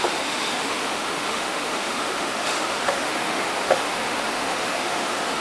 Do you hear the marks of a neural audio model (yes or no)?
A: yes